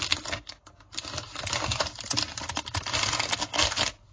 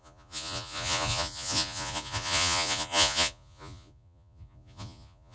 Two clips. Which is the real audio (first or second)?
first